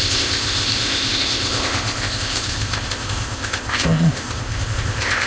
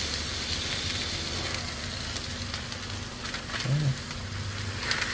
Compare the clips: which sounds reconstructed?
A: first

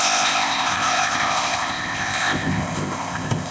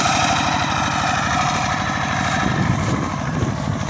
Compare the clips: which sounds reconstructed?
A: first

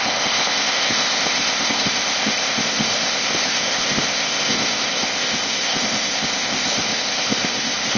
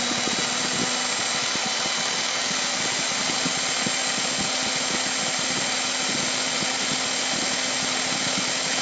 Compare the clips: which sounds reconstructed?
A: first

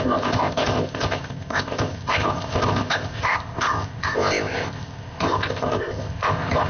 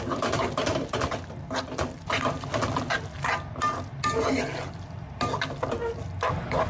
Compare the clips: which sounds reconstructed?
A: first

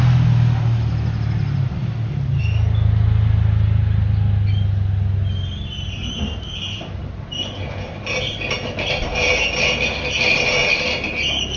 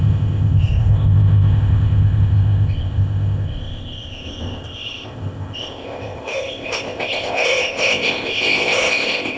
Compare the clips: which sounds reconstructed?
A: second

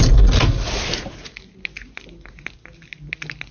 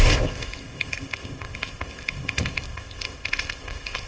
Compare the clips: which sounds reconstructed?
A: second